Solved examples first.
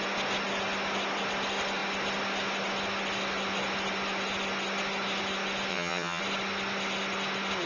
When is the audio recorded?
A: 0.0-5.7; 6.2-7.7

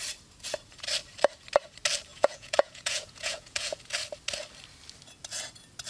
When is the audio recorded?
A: 0.0-2.1; 3.9-5.9

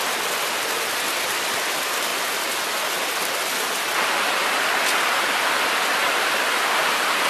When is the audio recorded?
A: 0.0-7.3

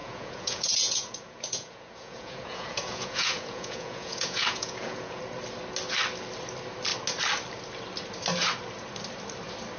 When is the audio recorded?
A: 5.2-9.8

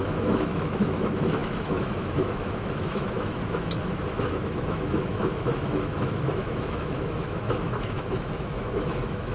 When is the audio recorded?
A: none